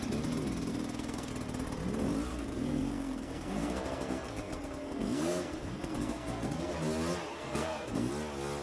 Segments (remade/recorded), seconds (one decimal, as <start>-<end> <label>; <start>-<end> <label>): 0.0-0.7 recorded; 0.7-1.3 remade; 1.3-2.3 recorded; 2.3-6.7 remade; 6.7-7.3 recorded; 7.3-8.1 remade; 8.1-8.6 recorded